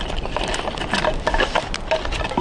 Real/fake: real